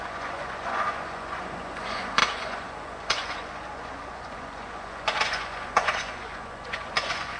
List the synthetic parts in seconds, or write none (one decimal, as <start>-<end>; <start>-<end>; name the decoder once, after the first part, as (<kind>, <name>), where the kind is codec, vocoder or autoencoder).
0.0-7.4 (vocoder, Vocos)